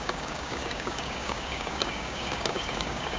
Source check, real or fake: fake